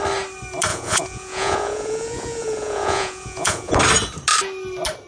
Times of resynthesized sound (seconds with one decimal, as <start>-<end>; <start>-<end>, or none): 0.7-3.8